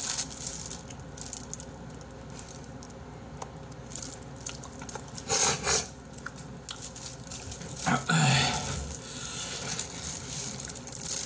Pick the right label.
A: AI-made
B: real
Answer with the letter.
B